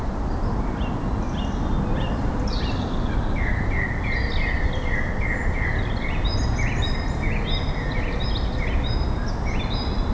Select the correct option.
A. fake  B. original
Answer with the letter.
B